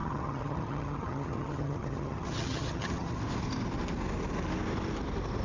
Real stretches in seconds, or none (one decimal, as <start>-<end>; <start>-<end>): 3.2-5.4